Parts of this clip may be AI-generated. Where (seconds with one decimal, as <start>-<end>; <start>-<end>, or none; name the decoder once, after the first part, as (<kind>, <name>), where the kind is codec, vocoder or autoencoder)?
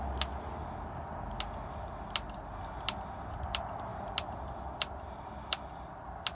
none